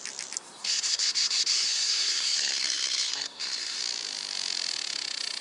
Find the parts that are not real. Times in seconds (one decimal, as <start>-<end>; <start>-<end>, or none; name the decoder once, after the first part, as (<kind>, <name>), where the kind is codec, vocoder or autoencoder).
0.6-3.8 (codec, SNAC)